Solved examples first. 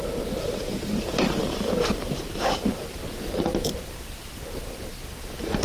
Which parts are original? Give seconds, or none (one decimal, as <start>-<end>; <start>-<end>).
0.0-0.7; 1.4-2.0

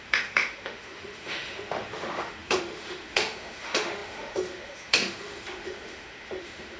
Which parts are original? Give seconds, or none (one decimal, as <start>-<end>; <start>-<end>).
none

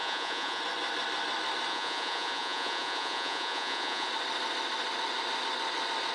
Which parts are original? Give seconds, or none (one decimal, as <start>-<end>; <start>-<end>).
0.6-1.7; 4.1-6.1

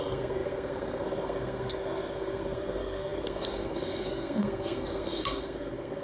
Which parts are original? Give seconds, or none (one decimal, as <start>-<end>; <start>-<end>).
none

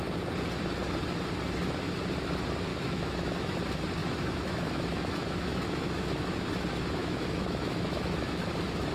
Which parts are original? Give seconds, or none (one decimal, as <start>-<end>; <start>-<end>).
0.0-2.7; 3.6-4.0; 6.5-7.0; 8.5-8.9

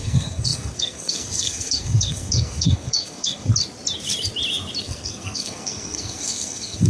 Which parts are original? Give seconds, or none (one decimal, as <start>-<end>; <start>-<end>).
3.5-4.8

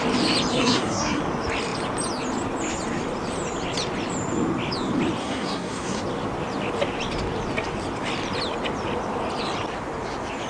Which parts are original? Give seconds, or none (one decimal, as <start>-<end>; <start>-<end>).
0.0-0.5; 1.2-5.2; 6.0-10.5